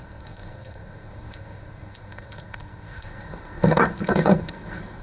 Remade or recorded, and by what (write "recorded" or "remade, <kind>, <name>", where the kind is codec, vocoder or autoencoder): remade, codec, SNAC